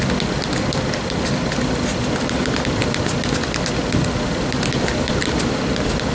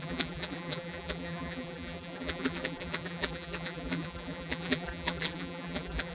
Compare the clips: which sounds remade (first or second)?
second